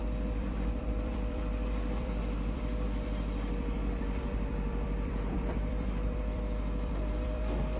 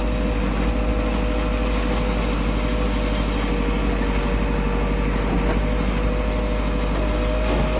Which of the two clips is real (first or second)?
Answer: second